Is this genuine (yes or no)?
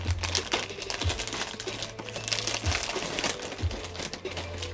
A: yes